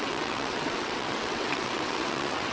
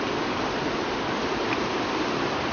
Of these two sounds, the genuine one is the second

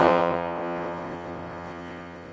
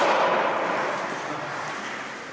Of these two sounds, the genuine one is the second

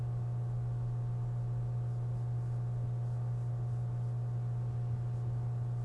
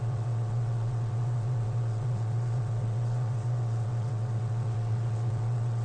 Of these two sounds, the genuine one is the first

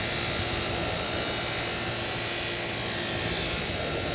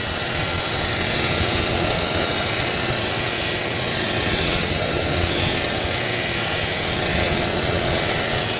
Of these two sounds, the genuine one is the first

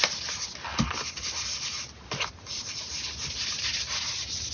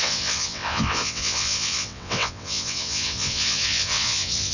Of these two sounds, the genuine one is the first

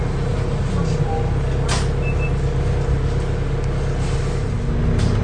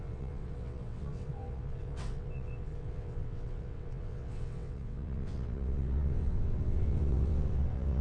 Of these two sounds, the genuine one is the first